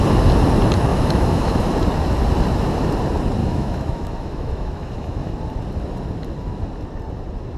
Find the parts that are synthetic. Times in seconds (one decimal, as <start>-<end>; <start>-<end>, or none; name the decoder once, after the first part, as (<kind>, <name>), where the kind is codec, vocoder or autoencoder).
0.9-1.7 (autoencoder, DAC-VAE); 3.4-5.3